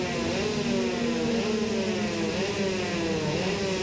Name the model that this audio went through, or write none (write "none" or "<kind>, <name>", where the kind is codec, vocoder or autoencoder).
none